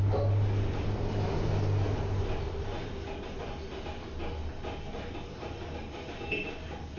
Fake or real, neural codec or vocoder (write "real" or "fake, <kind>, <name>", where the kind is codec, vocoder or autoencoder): real